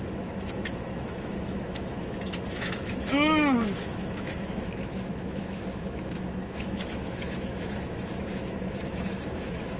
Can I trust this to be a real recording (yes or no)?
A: no